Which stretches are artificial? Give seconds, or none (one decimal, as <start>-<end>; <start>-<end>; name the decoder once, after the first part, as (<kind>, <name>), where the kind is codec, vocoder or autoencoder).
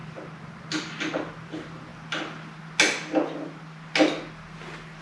none